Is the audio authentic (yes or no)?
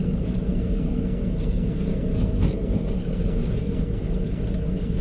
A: no